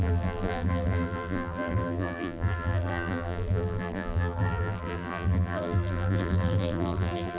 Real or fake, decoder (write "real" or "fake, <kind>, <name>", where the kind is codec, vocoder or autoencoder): fake, vocoder, BigVGAN v2